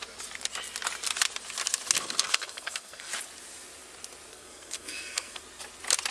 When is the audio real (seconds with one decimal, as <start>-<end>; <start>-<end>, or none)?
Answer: 0.0-2.0; 3.1-4.3; 5.4-6.1

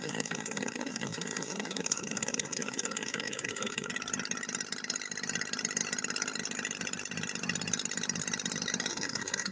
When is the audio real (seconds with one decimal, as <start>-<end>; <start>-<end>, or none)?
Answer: 3.9-8.9

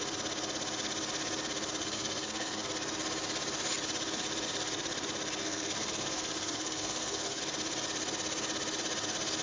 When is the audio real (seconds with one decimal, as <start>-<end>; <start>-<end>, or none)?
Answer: 0.0-1.8; 2.7-5.4; 7.4-9.4

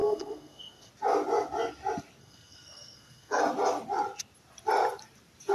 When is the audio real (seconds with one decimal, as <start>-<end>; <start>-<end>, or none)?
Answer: 0.9-2.2; 3.4-5.5

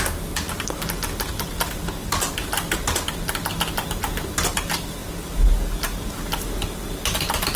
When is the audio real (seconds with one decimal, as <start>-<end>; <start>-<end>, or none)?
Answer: 0.0-7.6